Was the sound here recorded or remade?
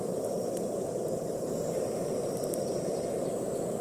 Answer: remade